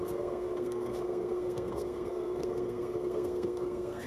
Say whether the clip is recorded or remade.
remade